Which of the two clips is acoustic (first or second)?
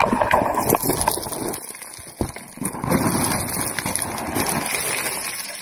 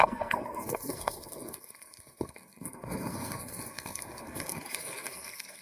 first